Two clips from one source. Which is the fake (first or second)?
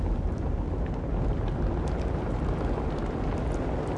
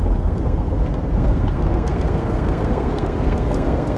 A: second